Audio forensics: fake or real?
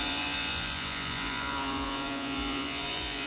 fake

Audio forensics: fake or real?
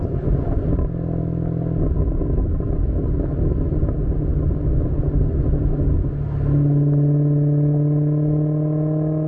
real